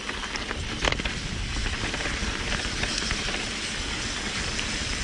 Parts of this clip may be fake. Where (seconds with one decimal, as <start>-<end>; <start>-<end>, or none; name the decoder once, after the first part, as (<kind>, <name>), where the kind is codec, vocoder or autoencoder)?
1.6-4.0 (vocoder, BigVGAN v2)